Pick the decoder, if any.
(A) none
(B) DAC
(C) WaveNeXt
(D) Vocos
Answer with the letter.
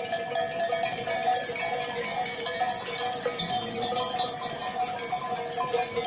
A